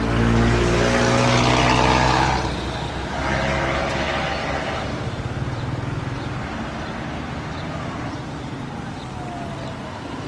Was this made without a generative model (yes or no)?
yes